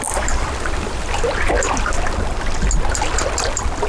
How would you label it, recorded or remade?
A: recorded